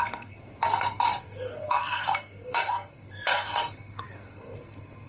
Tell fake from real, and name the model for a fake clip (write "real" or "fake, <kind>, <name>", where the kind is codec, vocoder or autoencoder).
fake, codec, SNAC